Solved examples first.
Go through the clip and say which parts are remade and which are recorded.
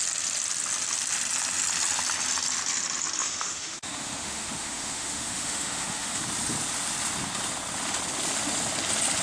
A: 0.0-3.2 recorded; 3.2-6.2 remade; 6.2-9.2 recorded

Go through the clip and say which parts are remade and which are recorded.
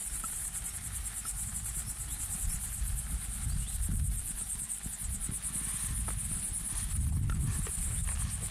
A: 0.0-3.4 remade; 3.4-3.9 recorded; 3.9-4.9 remade; 4.9-8.5 recorded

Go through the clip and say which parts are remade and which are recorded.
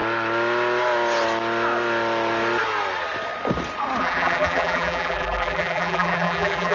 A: 0.0-4.0 recorded; 4.0-6.7 remade